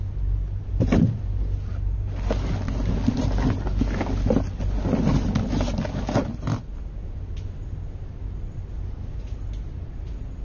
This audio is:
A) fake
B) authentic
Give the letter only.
B